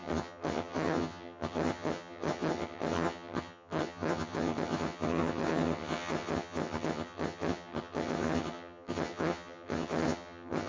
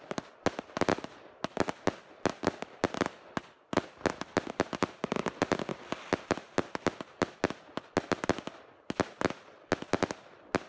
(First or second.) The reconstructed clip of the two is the first